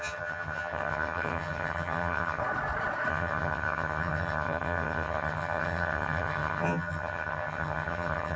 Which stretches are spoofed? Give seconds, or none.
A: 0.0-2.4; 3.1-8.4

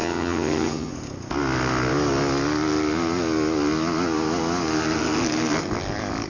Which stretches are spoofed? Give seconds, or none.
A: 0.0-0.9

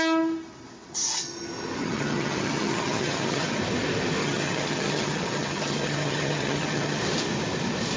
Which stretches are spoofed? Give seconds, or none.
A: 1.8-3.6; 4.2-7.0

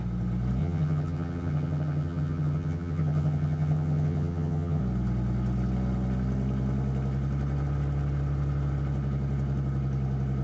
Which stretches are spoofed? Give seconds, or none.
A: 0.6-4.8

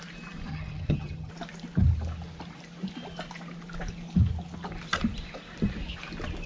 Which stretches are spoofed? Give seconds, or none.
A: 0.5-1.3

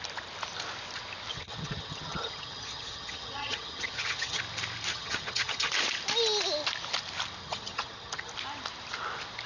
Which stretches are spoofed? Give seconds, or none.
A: 1.3-4.4; 4.9-5.7; 7.4-8.3

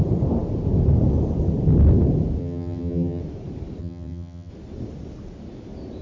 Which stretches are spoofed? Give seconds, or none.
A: 2.4-3.2; 3.8-4.5